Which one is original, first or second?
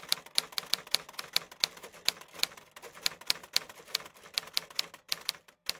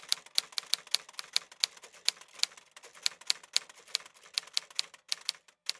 second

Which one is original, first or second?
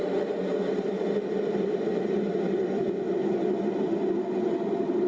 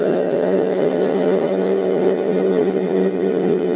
first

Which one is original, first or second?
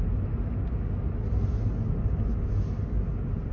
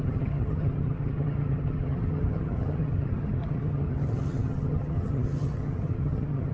first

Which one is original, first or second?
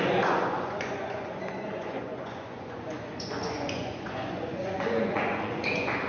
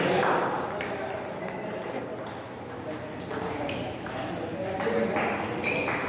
second